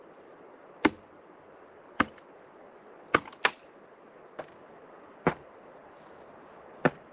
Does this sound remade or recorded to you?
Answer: recorded